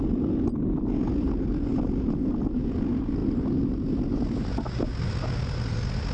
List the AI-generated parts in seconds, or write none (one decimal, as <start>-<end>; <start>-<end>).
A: none